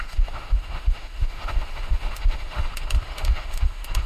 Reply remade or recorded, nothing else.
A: remade